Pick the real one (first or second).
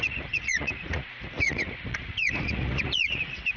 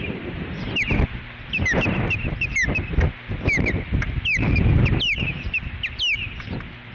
second